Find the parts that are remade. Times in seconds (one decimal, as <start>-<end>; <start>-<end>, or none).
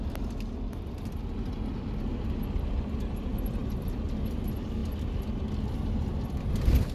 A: 3.6-4.3